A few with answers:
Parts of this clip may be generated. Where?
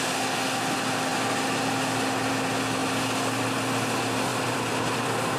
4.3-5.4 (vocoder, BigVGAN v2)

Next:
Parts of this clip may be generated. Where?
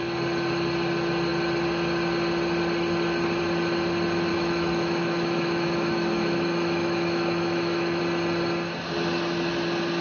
4.3-8.0 (autoencoder, DAC-VAE)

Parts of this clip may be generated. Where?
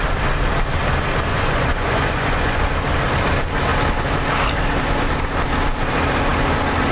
1.3-2.6 (vocoder, Vocos)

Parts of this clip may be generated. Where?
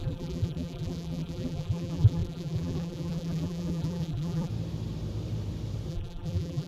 0.0-4.5 (vocoder, BigVGAN v2); 5.9-6.7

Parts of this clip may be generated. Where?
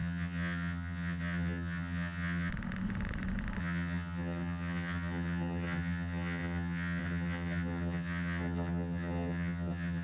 0.0-2.5 (vocoder, HiFi-GAN); 3.6-10.0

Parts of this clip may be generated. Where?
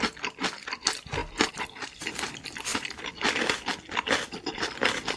1.2-2.1 (vocoder, BigVGAN v2); 2.7-3.7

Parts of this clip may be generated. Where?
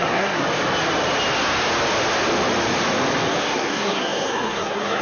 0.0-0.4 (codec, SNAC); 3.4-5.0